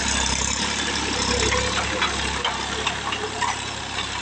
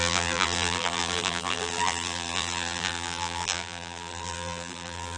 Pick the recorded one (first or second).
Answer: first